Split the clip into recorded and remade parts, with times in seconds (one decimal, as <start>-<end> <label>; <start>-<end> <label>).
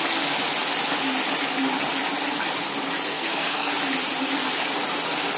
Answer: 0.0-3.1 recorded; 3.1-3.7 remade; 3.7-5.4 recorded